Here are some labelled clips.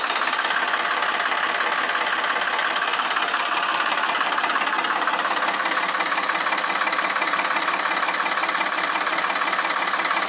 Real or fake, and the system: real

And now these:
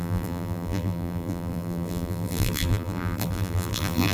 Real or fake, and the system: fake, vocoder, BigVGAN v2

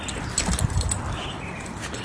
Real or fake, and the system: real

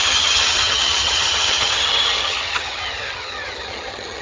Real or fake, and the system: fake, vocoder, HiFi-GAN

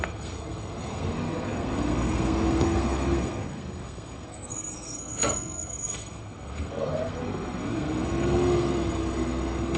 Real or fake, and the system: fake, codec, SNAC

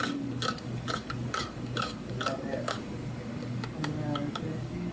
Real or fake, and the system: fake, codec, DAC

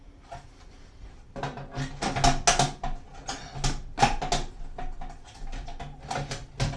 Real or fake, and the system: real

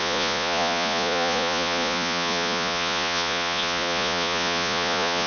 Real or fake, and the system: fake, vocoder, Vocos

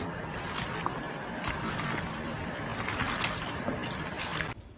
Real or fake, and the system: real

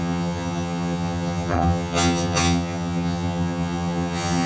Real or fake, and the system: fake, vocoder, HiFi-GAN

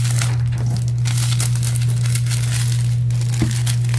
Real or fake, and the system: real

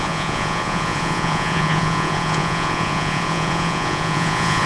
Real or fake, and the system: fake, vocoder, Vocos